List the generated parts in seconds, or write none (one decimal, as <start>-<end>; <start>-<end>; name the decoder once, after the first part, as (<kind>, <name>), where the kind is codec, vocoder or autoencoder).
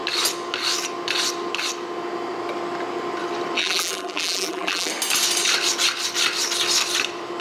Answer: 3.6-4.9 (vocoder, BigVGAN v2)